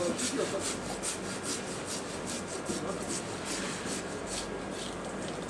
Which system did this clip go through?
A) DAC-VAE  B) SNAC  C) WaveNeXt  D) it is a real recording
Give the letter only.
D